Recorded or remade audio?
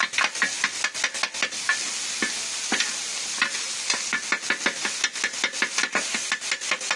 recorded